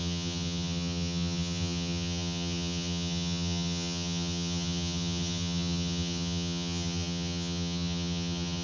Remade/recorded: remade